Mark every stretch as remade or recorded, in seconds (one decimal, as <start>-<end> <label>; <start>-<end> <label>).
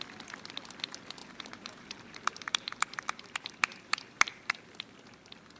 0.0-1.2 recorded; 1.2-4.6 remade; 4.6-5.6 recorded